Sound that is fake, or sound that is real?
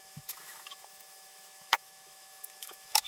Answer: fake